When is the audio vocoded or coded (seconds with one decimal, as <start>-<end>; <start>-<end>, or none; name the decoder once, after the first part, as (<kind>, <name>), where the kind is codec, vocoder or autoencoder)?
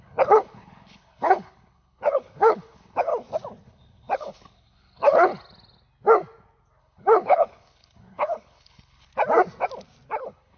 0.0-3.1 (codec, HILCodec); 3.6-5.3; 6.8-9.1; 10.1-10.6